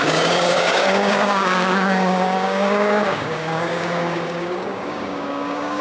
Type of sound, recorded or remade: remade